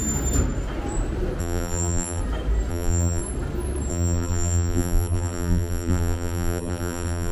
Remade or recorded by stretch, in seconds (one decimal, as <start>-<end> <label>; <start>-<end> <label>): 0.0-1.4 recorded; 1.4-2.2 remade; 2.2-2.7 recorded; 2.7-3.2 remade; 3.2-3.9 recorded; 3.9-7.3 remade